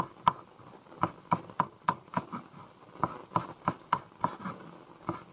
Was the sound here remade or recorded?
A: recorded